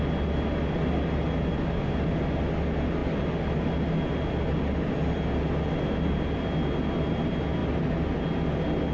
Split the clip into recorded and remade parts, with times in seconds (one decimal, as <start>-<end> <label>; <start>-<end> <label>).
0.0-8.9 recorded